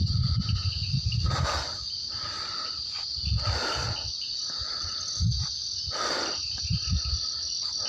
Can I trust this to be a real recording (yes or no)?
yes